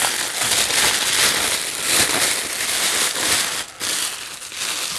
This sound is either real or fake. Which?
real